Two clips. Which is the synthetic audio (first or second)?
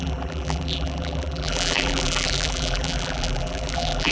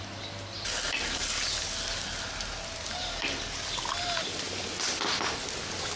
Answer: first